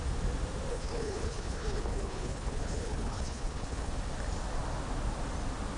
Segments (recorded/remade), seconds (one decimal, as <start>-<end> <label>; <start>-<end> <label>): 0.0-0.7 recorded; 0.7-3.9 remade; 3.9-5.8 recorded